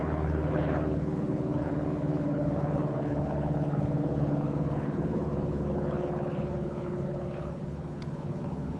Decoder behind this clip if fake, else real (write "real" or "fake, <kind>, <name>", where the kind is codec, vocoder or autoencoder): fake, codec, HILCodec